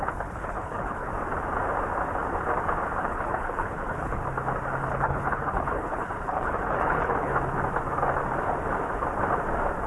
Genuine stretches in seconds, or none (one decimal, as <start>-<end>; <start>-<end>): 1.1-3.0; 4.2-4.8; 7.3-9.9